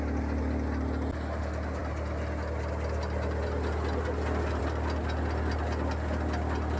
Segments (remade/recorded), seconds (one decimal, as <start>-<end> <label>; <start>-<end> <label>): 0.0-6.8 recorded